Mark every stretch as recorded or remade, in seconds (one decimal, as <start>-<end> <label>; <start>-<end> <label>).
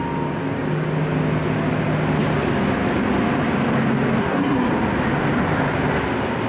0.0-4.2 recorded; 4.2-4.7 remade; 4.7-6.5 recorded